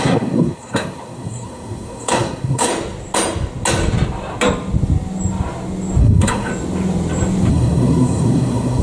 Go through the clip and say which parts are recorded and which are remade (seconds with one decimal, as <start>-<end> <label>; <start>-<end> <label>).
0.0-2.7 remade; 2.7-6.0 recorded; 6.0-6.5 remade; 6.5-7.5 recorded; 7.5-8.8 remade